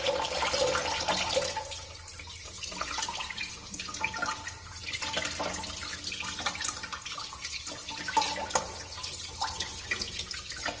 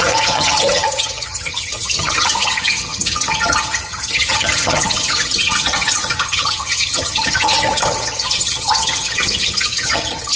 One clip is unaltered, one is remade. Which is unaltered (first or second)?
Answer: first